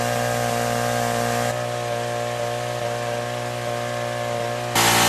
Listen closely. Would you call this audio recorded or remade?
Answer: recorded